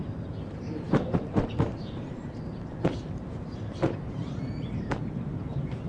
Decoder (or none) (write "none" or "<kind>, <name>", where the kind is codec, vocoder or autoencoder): vocoder, BigVGAN v2